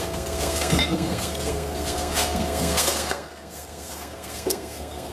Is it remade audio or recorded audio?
remade